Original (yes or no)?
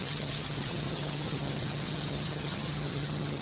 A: no